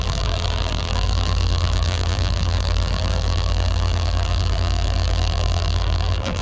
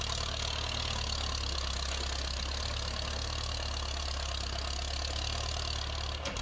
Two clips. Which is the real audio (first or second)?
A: second